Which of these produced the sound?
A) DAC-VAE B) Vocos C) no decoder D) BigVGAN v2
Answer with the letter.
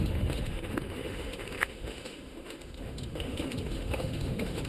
A